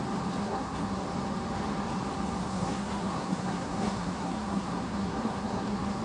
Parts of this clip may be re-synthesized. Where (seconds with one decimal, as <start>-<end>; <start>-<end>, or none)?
0.4-1.0; 2.4-6.0